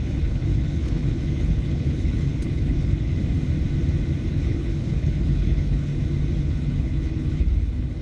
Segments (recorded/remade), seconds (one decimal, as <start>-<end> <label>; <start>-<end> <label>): 0.0-3.2 remade; 3.2-4.3 recorded; 4.3-5.9 remade; 5.9-6.4 recorded; 6.4-8.0 remade